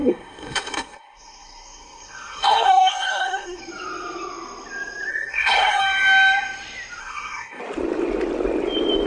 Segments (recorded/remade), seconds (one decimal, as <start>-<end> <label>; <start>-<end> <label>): 0.0-3.6 remade; 3.6-5.1 recorded; 5.1-5.8 remade; 5.8-7.0 recorded; 7.0-7.6 remade; 7.6-9.1 recorded

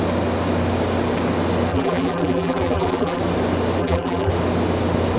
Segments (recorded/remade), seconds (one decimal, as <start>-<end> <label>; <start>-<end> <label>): 0.0-1.7 recorded; 1.7-3.2 remade; 3.2-3.8 recorded; 3.8-4.3 remade; 4.3-5.2 recorded

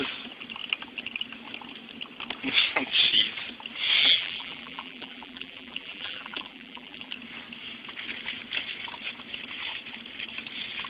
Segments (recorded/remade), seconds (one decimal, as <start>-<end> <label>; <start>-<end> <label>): 0.0-4.0 recorded; 4.0-7.1 remade; 7.1-10.9 recorded